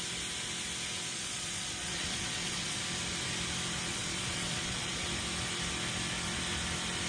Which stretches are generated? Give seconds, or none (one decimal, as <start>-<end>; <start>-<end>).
1.1-2.8; 3.9-5.1